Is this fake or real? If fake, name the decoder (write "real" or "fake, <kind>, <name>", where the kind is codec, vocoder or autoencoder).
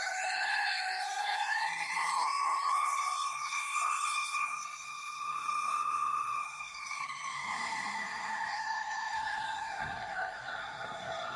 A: fake, codec, SNAC